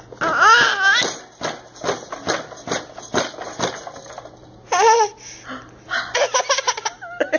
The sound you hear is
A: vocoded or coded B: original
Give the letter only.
B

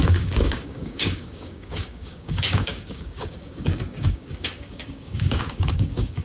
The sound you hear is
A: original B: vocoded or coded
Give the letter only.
B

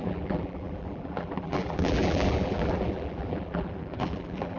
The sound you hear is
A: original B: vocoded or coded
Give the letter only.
B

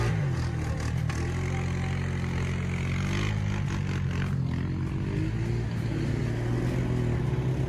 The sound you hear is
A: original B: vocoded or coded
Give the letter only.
A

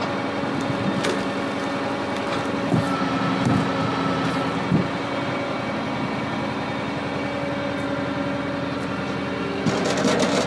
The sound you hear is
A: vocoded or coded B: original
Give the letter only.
B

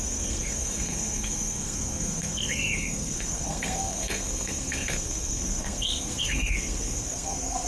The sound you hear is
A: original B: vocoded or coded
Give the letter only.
B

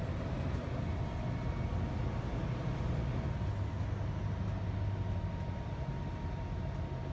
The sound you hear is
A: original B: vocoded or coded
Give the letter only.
A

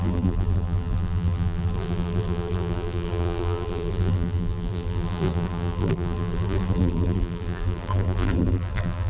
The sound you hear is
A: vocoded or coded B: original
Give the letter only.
A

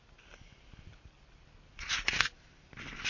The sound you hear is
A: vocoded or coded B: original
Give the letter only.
B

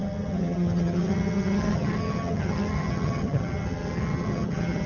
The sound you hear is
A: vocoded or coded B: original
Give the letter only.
A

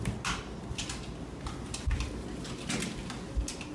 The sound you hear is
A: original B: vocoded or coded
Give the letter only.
A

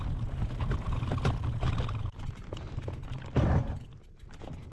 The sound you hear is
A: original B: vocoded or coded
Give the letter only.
A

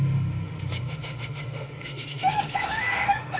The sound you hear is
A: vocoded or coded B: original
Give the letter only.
A